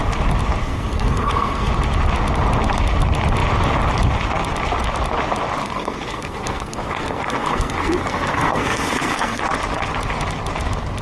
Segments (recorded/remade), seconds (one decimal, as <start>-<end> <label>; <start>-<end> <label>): 0.0-0.6 recorded; 0.6-1.7 remade; 1.7-5.6 recorded; 5.6-9.4 remade; 9.4-11.0 recorded